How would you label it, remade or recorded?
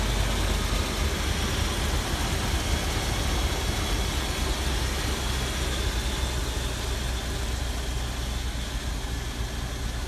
recorded